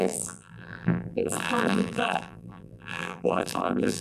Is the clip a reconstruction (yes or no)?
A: yes